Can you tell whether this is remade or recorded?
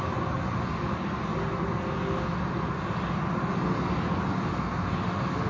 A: recorded